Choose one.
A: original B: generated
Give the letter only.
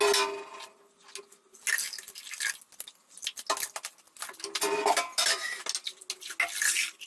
A